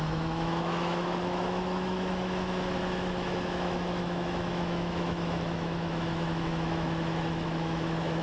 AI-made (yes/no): yes